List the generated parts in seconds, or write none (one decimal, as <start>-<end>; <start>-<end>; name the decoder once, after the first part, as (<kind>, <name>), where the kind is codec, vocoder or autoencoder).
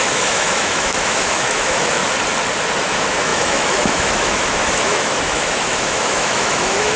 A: 0.0-2.0 (autoencoder, DAC-VAE); 2.8-7.0